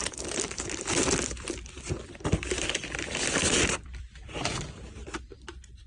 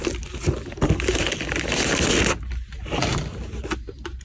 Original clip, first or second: second